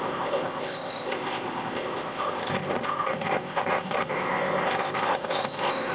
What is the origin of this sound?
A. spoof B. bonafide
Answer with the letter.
A